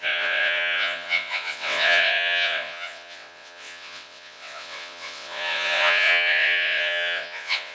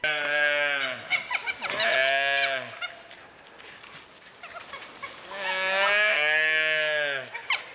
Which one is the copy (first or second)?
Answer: first